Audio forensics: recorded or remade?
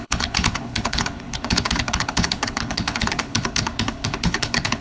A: remade